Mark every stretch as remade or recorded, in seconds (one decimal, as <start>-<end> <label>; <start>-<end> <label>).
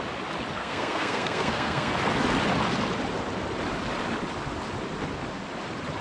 0.0-0.6 recorded; 0.6-1.9 remade; 1.9-6.0 recorded